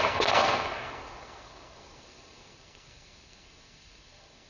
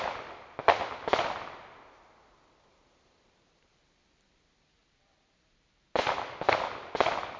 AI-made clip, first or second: first